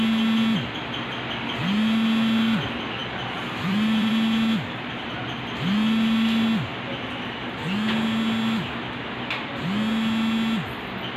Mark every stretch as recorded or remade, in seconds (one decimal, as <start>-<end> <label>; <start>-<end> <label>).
0.0-3.0 recorded; 3.0-4.1 remade; 4.1-11.2 recorded